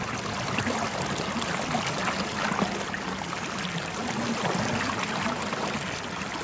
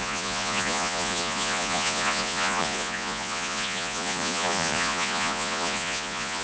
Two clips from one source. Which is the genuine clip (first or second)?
first